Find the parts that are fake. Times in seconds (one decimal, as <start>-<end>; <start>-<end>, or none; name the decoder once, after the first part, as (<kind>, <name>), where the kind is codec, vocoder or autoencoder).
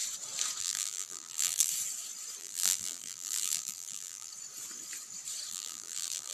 0.6-1.7 (vocoder, BigVGAN v2); 2.4-4.3; 5.5-6.3